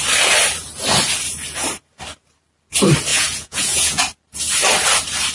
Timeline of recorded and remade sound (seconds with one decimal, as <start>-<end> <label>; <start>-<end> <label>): 0.0-3.1 recorded; 3.1-4.0 remade; 4.0-5.3 recorded